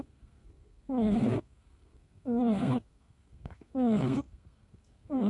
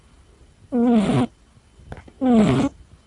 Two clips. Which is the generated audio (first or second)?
first